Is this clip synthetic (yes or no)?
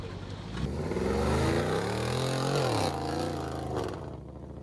no